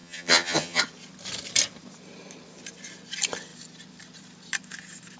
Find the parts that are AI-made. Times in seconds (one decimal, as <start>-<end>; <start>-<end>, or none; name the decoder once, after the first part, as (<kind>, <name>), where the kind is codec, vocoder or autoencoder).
0.0-0.8 (vocoder, HiFi-GAN)